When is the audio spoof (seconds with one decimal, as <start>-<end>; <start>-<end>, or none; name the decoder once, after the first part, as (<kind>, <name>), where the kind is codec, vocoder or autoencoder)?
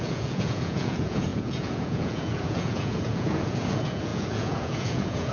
0.0-5.3 (vocoder, Vocos)